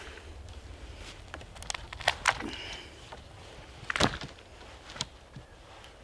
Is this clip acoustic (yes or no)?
yes